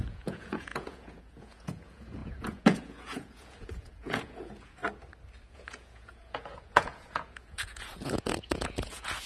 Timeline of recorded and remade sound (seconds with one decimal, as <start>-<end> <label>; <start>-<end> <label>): 0.0-4.8 remade; 4.8-5.5 recorded; 5.5-9.3 remade